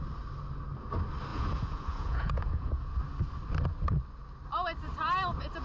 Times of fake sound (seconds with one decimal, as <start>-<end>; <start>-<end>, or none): 1.3-2.9